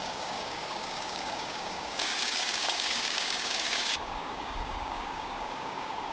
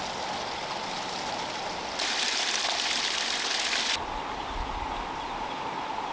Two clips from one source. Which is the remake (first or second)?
first